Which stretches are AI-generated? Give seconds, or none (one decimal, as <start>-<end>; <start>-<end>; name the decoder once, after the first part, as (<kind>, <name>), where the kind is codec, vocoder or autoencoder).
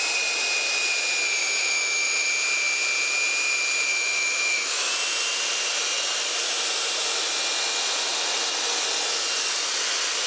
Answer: 1.4-2.3 (autoencoder, DAC-VAE); 3.9-4.9